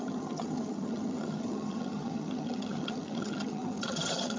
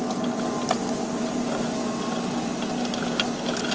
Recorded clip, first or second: second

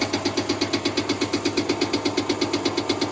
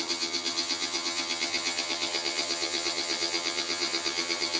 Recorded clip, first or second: first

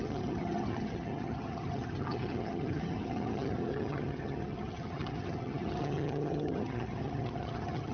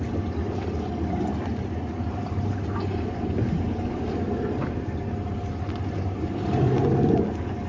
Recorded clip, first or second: second